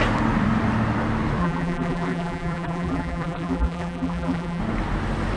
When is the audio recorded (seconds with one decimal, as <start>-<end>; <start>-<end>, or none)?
0.0-1.4; 4.6-5.4